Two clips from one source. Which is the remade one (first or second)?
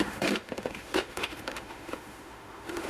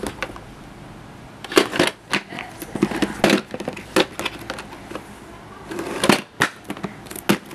first